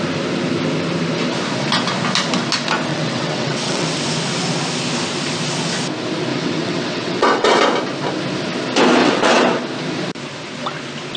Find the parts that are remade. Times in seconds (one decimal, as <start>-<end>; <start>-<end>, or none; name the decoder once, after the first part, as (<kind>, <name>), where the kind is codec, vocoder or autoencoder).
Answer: 2.9-4.0 (vocoder, WaveNeXt); 6.3-7.6; 9.0-9.6